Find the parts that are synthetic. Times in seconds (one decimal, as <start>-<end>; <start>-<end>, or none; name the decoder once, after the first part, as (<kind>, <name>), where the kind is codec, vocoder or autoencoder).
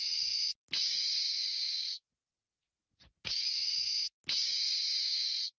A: none